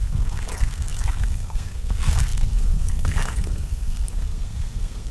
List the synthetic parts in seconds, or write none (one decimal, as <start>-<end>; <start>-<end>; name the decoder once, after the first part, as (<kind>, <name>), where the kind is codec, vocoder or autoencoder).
0.0-5.1 (codec, SNAC)